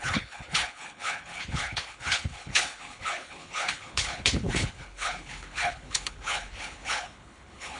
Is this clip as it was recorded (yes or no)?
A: no